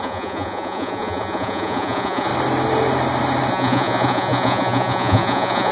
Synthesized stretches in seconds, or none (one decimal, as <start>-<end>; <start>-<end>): 0.0-2.3; 3.5-5.7